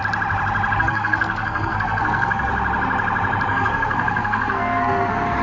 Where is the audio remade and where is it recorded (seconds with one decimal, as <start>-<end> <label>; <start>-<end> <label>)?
0.0-0.8 recorded; 0.8-2.5 remade; 2.5-3.5 recorded; 3.5-5.4 remade